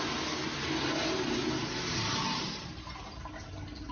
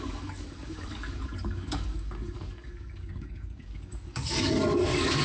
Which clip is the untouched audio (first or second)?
first